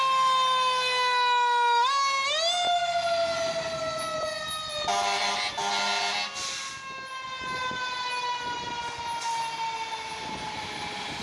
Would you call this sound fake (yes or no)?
no